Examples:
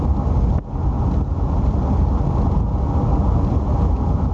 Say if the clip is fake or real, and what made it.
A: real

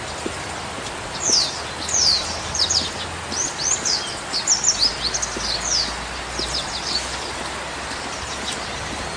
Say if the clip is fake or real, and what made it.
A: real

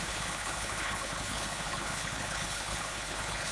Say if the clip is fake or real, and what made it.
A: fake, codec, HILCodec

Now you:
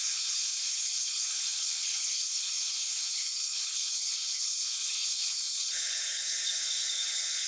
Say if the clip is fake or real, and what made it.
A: fake, codec, HILCodec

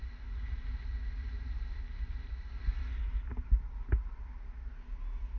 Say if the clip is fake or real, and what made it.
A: real